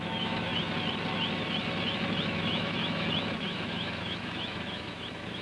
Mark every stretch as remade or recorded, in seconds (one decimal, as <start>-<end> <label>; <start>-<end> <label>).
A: 0.0-0.5 remade; 0.5-2.2 recorded; 2.2-5.4 remade